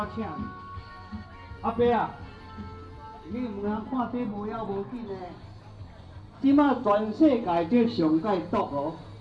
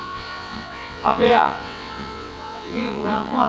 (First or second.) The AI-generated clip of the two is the second